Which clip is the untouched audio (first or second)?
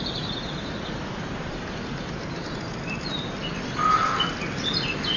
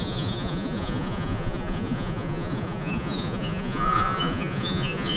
first